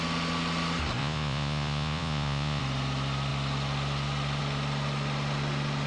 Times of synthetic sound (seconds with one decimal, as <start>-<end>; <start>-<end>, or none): 1.0-2.6